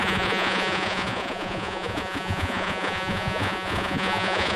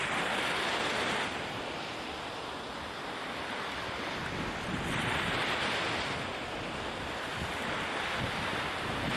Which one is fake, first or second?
first